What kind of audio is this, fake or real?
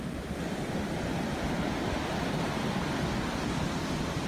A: real